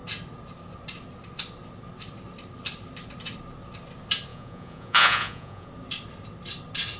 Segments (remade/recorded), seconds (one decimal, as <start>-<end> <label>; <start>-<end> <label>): 0.0-4.3 recorded; 4.3-5.7 remade; 5.7-7.0 recorded